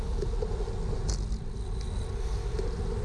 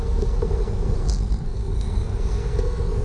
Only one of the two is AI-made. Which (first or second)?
second